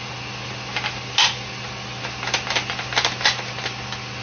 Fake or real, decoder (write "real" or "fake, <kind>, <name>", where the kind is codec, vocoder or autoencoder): real